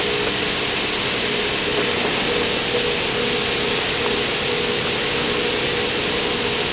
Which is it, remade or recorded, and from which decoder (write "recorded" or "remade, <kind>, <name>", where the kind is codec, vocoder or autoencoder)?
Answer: recorded